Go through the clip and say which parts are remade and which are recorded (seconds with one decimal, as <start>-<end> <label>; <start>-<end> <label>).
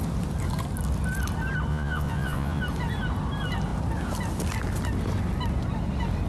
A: 0.0-1.7 recorded; 1.7-2.6 remade; 2.6-6.3 recorded